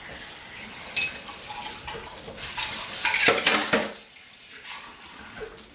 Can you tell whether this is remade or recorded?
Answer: recorded